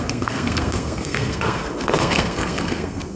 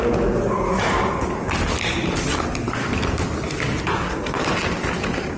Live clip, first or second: second